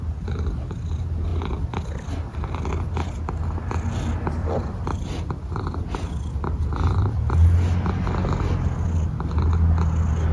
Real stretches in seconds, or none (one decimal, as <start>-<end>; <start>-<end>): 0.0-4.4; 5.2-10.3